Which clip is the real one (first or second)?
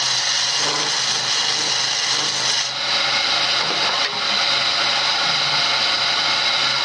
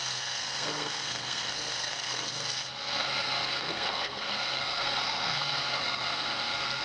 first